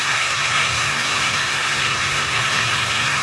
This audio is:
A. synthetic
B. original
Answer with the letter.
A